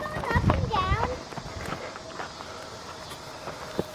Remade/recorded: recorded